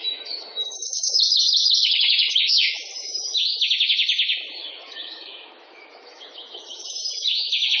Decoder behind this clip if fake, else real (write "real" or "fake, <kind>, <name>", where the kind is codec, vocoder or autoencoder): fake, autoencoder, DAC-VAE